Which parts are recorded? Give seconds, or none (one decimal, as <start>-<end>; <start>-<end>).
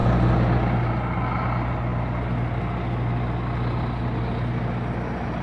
0.0-5.4